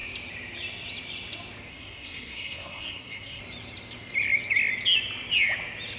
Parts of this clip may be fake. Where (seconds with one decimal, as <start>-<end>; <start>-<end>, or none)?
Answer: 1.7-3.4